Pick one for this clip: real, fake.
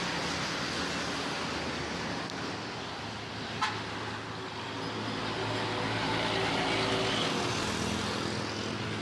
real